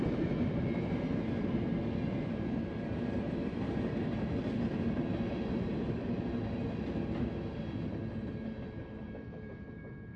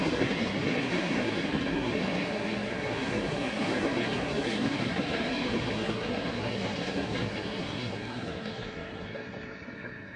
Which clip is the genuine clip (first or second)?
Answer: first